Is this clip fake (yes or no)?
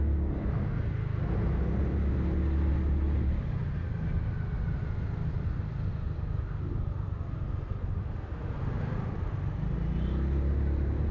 no